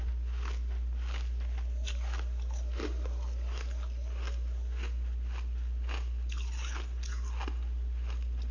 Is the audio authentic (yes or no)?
yes